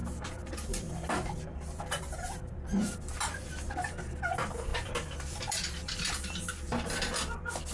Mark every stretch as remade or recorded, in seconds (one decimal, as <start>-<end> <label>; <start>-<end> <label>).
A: 0.0-3.7 remade; 3.7-4.7 recorded; 4.7-6.1 remade; 6.1-7.7 recorded